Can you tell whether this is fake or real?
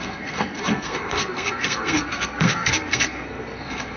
fake